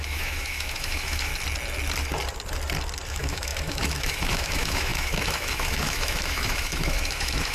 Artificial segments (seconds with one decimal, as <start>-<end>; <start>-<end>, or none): 0.0-1.3; 3.1-7.5